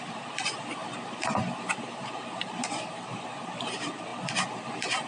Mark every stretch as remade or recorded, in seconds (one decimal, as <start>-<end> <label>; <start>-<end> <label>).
0.0-4.1 remade; 4.1-4.6 recorded; 4.6-5.1 remade